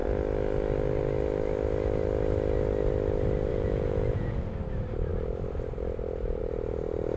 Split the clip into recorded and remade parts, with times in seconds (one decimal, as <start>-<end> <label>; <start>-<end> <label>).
0.0-3.5 recorded; 3.5-4.5 remade; 4.5-7.2 recorded